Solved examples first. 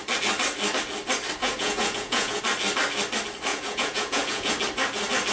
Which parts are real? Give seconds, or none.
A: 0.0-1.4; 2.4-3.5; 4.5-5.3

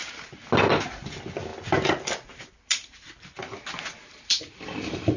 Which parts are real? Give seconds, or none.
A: 0.0-5.2

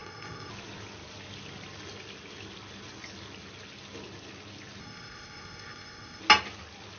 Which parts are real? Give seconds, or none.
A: 0.5-4.8; 6.2-7.0

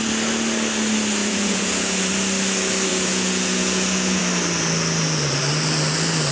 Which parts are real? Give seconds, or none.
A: 0.0-1.2; 2.1-2.9; 4.2-6.3

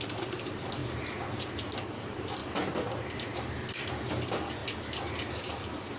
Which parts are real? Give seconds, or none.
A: 0.8-1.4; 2.4-3.0; 4.6-5.3